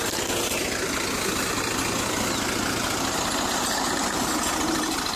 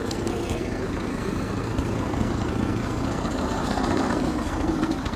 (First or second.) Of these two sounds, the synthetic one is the second